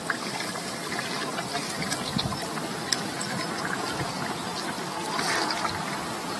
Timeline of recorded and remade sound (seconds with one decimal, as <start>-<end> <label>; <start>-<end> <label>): 0.0-6.4 recorded